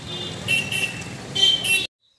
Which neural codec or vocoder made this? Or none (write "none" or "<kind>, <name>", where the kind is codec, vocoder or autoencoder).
none